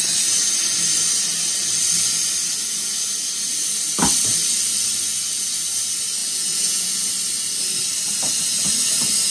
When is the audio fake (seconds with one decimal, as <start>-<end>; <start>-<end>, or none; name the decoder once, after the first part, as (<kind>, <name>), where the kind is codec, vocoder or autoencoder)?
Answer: 6.2-7.1 (vocoder, Vocos)